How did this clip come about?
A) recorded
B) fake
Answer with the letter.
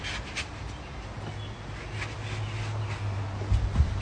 A